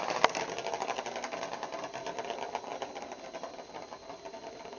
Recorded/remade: recorded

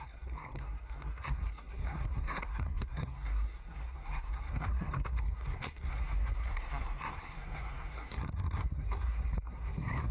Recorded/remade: remade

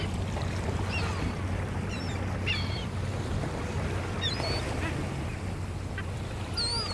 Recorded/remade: recorded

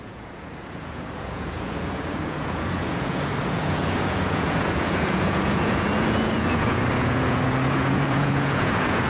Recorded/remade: remade